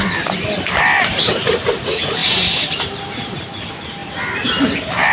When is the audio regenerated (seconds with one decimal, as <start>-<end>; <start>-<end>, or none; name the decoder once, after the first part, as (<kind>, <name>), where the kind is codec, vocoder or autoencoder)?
none